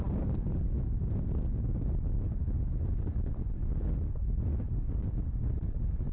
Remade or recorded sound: remade